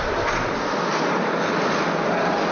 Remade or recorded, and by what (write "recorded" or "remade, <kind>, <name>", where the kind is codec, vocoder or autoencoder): recorded